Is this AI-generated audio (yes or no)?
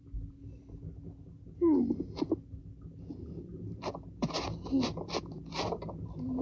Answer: no